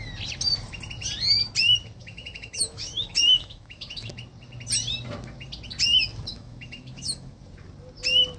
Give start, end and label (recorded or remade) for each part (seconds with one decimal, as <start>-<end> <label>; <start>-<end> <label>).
0.0-2.0 recorded; 2.0-4.1 remade; 4.1-6.3 recorded; 6.3-7.4 remade; 7.4-8.4 recorded